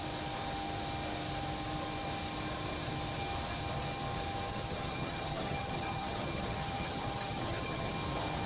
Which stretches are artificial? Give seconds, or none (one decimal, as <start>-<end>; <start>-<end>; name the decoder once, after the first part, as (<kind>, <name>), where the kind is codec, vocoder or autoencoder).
4.5-7.9 (vocoder, HiFi-GAN)